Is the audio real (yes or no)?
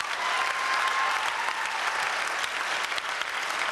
yes